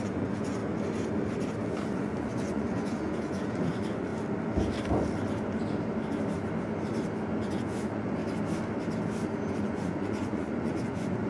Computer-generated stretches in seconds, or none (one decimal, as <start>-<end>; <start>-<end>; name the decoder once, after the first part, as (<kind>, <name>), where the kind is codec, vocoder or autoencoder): 0.0-0.6 (vocoder, Vocos); 1.9-4.1; 7.4-8.2; 9.5-11.3